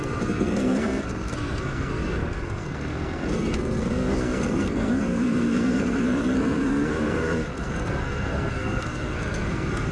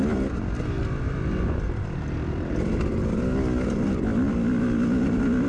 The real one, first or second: second